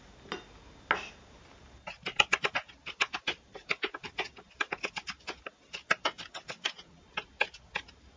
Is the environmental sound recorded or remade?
recorded